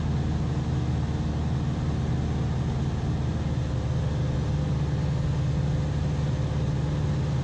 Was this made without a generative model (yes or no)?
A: yes